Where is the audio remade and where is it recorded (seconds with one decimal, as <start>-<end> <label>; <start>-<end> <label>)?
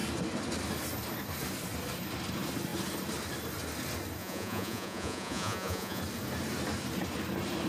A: 0.0-4.2 recorded; 4.2-6.0 remade; 6.0-7.7 recorded